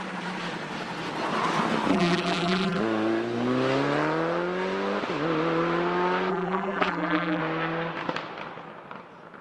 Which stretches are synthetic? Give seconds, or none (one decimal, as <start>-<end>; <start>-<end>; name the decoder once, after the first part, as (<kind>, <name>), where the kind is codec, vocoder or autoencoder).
1.9-2.8 (vocoder, BigVGAN v2); 6.3-7.4